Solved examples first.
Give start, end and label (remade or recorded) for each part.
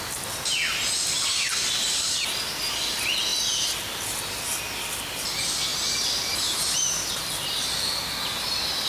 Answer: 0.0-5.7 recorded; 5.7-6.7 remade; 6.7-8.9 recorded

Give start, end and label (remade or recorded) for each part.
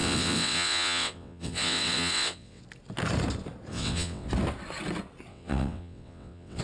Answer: 0.0-2.6 remade; 2.6-3.7 recorded; 3.7-4.3 remade; 4.3-5.3 recorded; 5.3-6.6 remade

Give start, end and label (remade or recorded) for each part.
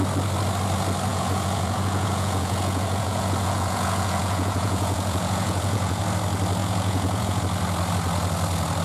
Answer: 0.0-1.1 recorded; 1.1-6.0 remade; 6.0-6.6 recorded; 6.6-7.4 remade; 7.4-8.8 recorded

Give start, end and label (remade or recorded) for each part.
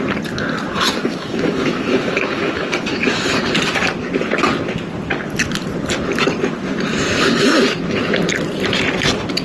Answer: 0.0-1.0 recorded; 1.0-3.4 remade; 3.4-9.4 recorded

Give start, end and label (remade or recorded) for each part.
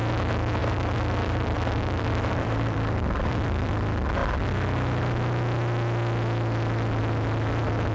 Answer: 0.0-0.6 recorded; 0.6-3.7 remade; 3.7-7.9 recorded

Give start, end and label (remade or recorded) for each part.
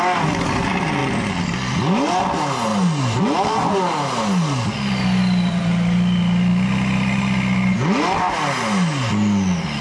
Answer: 0.0-9.8 recorded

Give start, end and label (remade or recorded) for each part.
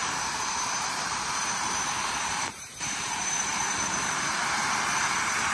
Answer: 0.0-4.4 remade; 4.4-5.1 recorded; 5.1-5.5 remade